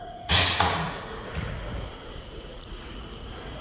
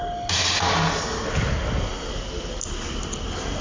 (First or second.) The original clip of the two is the second